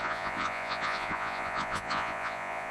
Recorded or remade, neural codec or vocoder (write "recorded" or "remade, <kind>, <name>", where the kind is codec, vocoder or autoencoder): remade, vocoder, Vocos